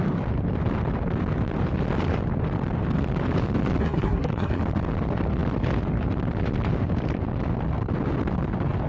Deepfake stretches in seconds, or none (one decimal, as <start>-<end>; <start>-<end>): 3.8-4.6